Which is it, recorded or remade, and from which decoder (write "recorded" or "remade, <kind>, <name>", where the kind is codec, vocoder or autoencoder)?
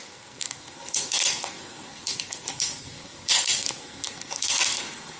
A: remade, codec, SNAC